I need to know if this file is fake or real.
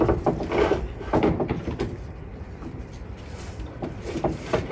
fake